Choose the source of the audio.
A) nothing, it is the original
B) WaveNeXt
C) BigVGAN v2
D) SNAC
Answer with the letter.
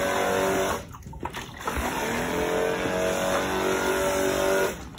A